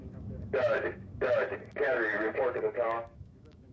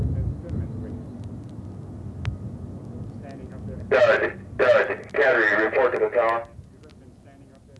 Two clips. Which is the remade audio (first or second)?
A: first